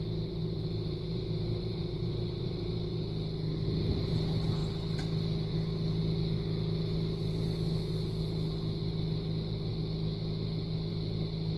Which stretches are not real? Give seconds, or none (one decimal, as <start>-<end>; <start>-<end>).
0.4-3.0